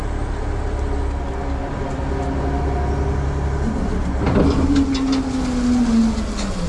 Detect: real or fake real